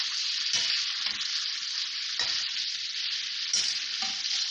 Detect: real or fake real